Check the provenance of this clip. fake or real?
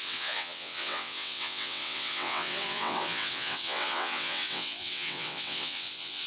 fake